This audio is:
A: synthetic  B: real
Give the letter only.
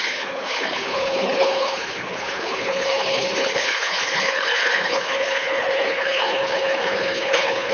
A